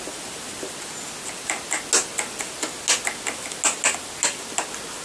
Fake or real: real